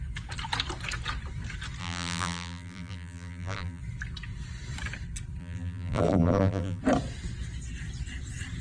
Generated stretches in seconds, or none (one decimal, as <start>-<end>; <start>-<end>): 1.8-3.8; 5.4-6.8